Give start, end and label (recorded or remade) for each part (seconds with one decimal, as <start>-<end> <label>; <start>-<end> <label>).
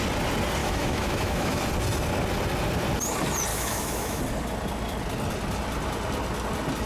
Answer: 0.0-0.6 recorded; 0.6-1.6 remade; 1.6-3.5 recorded; 3.5-4.2 remade; 4.2-6.9 recorded